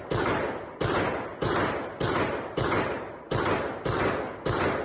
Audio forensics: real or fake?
real